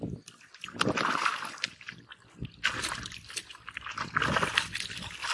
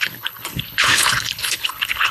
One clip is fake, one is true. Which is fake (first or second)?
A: second